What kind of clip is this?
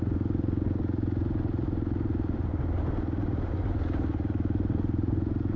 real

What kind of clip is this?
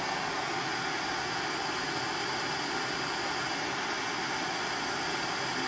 real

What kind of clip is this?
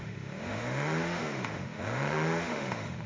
fake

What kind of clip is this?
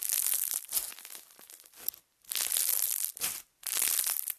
real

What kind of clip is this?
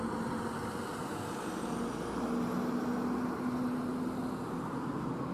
real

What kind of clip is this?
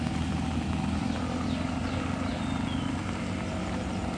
real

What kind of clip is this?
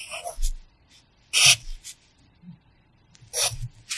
real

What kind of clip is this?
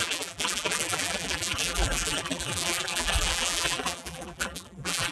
fake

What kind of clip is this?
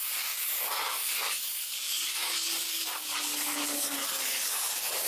fake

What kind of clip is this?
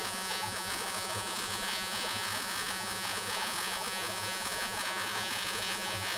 fake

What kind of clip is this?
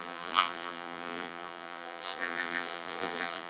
fake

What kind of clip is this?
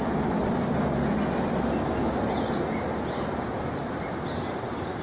real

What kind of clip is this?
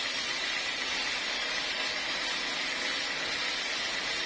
real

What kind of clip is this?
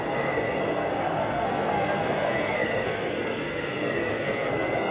fake